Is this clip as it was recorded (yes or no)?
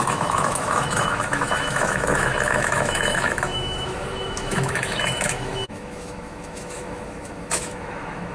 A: no